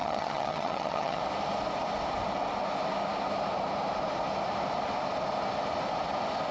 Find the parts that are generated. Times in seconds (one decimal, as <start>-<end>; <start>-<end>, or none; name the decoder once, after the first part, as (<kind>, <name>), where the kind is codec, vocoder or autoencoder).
0.0-1.2 (vocoder, HiFi-GAN)